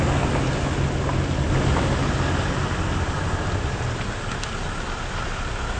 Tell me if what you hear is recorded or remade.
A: recorded